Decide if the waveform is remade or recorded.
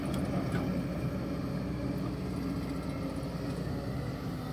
recorded